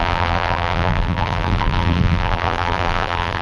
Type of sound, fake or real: fake